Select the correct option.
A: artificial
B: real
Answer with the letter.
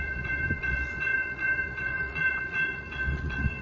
A